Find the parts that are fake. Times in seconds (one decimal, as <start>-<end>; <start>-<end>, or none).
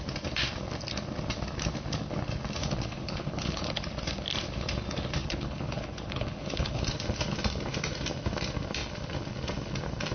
2.6-3.7; 5.2-6.8